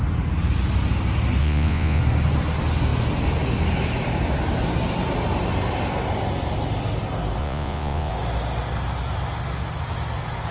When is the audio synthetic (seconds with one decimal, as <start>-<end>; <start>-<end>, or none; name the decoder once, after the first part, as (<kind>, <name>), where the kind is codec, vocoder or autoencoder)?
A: 1.4-2.0 (vocoder, Vocos); 7.4-8.1